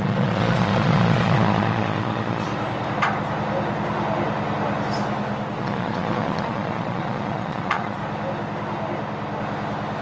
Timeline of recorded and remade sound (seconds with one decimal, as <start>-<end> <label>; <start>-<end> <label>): 0.0-2.5 remade; 2.5-5.6 recorded; 5.6-8.0 remade; 8.0-10.0 recorded